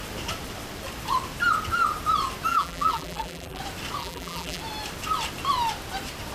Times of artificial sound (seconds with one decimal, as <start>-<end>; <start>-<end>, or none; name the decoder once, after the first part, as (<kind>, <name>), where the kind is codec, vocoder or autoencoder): 2.5-3.6 (vocoder, BigVGAN v2); 4.0-4.6